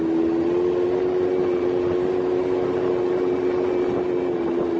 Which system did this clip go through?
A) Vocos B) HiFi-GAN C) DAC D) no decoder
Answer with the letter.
D